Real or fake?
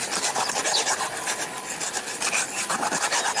real